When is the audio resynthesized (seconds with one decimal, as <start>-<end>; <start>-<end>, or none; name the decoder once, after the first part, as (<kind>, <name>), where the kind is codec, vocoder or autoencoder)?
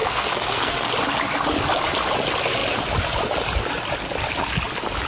0.0-0.9 (codec, SNAC)